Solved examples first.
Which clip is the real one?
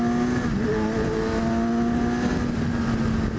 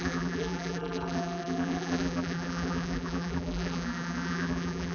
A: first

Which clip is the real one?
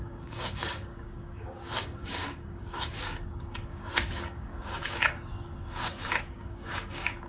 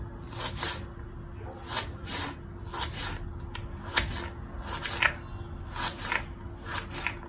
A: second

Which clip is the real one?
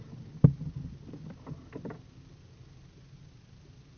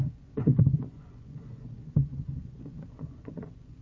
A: first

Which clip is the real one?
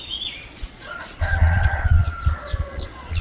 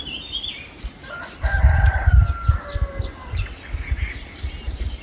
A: second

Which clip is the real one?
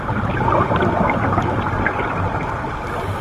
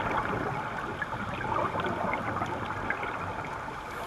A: second